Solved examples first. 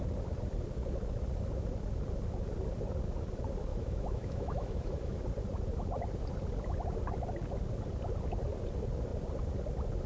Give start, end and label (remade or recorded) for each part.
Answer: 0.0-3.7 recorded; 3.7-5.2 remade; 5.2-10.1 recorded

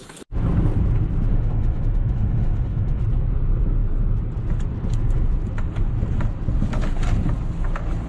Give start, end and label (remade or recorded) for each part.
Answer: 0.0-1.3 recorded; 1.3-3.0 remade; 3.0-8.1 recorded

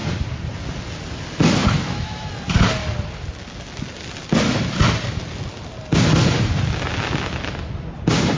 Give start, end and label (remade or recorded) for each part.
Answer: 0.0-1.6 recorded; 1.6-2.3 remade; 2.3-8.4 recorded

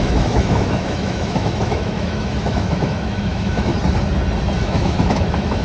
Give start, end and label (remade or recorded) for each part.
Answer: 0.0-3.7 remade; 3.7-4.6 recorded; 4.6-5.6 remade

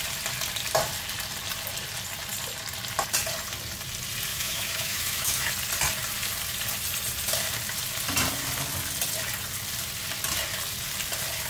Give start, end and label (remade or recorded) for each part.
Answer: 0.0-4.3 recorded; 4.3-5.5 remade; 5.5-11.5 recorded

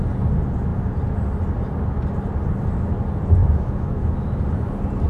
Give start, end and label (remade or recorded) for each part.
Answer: 0.0-3.4 recorded; 3.4-4.4 remade; 4.4-5.1 recorded